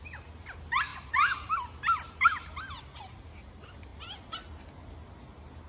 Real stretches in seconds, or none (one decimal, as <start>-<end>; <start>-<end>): 0.0-5.7